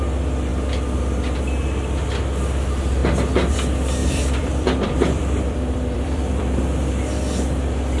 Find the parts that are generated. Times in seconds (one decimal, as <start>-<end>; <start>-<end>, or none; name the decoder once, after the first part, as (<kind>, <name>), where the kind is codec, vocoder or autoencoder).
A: 4.0-6.6 (vocoder, BigVGAN v2)